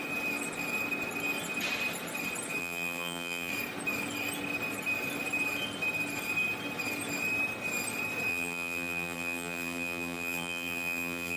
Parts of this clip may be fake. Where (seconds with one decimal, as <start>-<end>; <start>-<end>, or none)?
2.6-3.5; 8.3-11.4